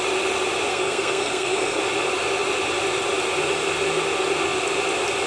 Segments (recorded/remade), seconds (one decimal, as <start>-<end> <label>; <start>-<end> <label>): 0.0-0.7 recorded; 0.7-1.8 remade; 1.8-5.3 recorded

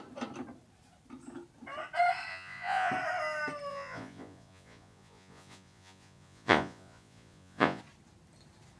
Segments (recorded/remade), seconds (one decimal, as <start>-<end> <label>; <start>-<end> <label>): 0.0-2.3 recorded; 2.3-2.9 remade; 2.9-3.7 recorded; 3.7-7.8 remade; 7.8-8.8 recorded

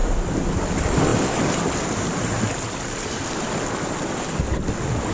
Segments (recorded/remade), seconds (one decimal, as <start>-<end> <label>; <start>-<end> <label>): 0.0-5.1 recorded

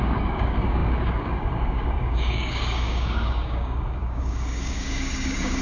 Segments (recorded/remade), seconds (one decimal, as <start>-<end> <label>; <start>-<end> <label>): 0.0-5.6 remade

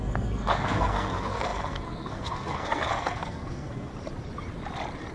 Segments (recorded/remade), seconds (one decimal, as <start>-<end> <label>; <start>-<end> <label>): 0.0-3.9 remade; 3.9-5.1 recorded

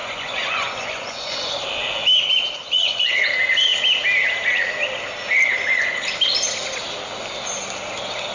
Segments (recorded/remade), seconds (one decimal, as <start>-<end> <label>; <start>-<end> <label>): 0.0-1.6 remade; 1.6-2.6 recorded; 2.6-3.2 remade; 3.2-8.3 recorded